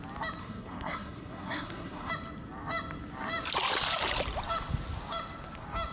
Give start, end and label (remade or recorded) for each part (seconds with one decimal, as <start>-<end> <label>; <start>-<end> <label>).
0.0-0.4 recorded; 0.4-2.1 remade; 2.1-5.9 recorded